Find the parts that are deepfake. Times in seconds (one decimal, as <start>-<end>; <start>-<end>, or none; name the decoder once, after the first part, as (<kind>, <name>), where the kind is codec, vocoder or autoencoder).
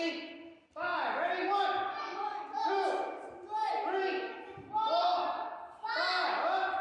none